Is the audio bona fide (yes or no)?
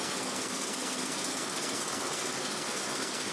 no